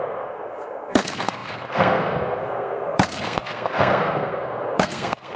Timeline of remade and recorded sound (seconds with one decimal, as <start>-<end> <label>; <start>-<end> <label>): 0.0-5.4 remade